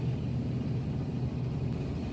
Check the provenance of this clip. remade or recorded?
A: recorded